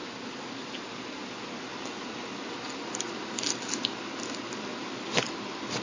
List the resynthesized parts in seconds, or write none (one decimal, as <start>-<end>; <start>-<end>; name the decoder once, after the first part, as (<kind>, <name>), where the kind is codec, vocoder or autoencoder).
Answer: none